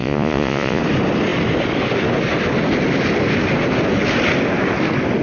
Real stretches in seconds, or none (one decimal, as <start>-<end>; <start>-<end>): 0.8-5.2